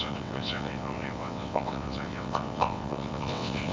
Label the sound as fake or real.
fake